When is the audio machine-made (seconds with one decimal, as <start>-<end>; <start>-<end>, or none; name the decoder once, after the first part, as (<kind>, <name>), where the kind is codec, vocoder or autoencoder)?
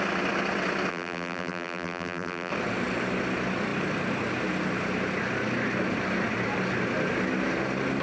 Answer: 0.9-2.5 (vocoder, BigVGAN v2)